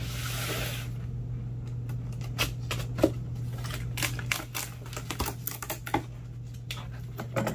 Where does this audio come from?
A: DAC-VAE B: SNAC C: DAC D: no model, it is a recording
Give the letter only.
D